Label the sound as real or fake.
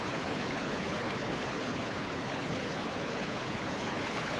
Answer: fake